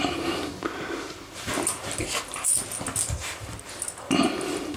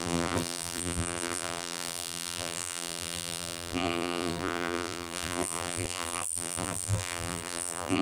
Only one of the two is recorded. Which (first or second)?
first